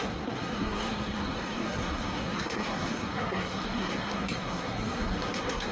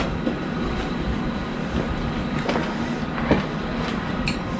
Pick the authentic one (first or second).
second